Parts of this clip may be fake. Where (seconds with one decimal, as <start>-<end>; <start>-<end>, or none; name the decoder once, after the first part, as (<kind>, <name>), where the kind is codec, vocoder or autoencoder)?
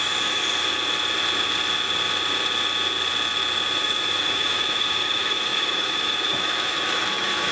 0.0-0.4 (autoencoder, DAC-VAE); 3.8-7.5